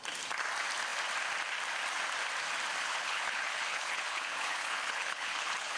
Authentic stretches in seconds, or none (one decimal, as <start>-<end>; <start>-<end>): 0.0-2.8

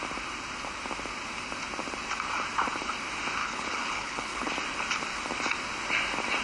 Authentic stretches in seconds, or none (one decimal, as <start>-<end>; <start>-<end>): 0.0-3.4; 4.5-6.4